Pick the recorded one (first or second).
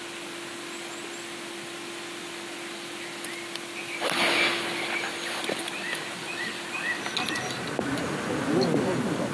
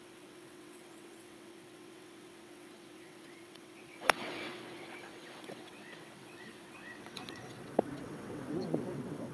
first